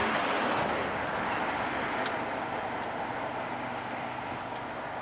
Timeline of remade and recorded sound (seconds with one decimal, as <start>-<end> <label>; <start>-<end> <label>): 0.0-5.0 recorded

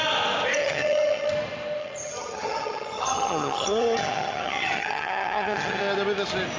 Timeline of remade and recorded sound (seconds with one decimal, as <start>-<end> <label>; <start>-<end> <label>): 0.0-0.6 recorded; 0.6-1.3 remade; 1.3-1.8 recorded; 1.8-5.8 remade; 5.8-6.6 recorded

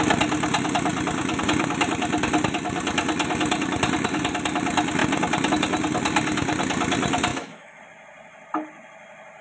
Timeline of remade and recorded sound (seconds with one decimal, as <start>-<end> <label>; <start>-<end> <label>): 0.0-7.3 recorded; 7.3-7.8 remade; 7.8-9.4 recorded

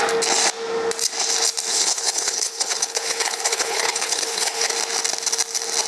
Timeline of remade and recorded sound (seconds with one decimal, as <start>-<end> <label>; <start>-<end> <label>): 0.0-1.7 recorded; 1.7-4.7 remade; 4.7-5.9 recorded

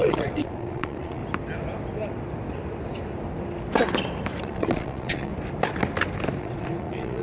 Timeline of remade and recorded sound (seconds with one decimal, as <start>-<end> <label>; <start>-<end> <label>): 0.0-1.2 remade; 1.2-4.4 recorded; 4.4-5.3 remade; 5.3-6.4 recorded; 6.4-7.2 remade

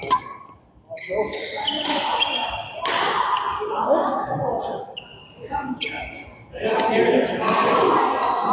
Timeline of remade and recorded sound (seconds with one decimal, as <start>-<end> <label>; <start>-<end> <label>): 0.0-5.1 recorded; 5.1-6.1 remade; 6.1-8.5 recorded

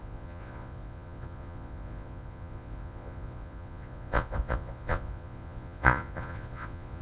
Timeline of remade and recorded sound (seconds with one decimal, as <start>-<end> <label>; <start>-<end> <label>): 0.0-7.0 remade